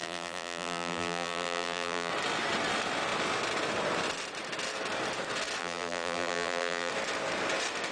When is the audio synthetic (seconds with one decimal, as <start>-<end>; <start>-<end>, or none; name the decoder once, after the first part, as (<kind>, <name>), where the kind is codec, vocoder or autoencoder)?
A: 0.0-2.1 (vocoder, BigVGAN v2); 5.6-6.9